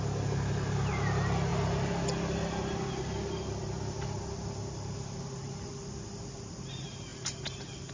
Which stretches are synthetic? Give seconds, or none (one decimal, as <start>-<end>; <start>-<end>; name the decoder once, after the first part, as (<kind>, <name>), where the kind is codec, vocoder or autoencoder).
none